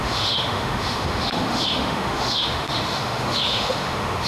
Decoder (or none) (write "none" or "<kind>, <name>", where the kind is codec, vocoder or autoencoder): autoencoder, DAC-VAE